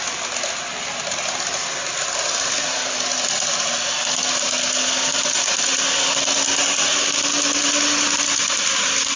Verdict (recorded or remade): recorded